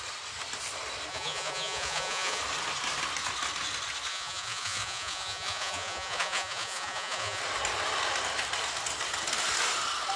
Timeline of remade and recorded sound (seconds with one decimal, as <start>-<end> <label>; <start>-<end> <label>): 0.0-1.1 recorded; 1.1-2.4 remade; 2.4-4.1 recorded; 4.1-7.4 remade; 7.4-10.2 recorded